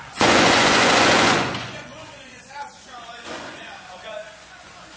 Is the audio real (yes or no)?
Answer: no